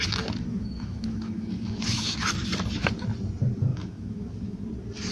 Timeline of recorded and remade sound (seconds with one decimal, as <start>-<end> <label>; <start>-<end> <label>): 0.0-0.5 recorded; 0.5-2.2 remade; 2.2-3.7 recorded; 3.7-4.6 remade; 4.6-5.1 recorded